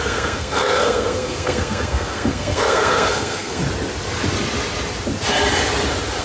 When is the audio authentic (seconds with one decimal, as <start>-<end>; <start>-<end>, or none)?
3.6-6.2